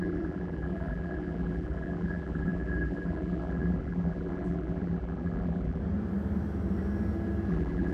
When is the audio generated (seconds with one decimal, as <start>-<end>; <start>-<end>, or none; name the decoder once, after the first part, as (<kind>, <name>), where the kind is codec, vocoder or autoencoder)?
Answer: 0.0-5.8 (vocoder, BigVGAN v2); 7.5-7.9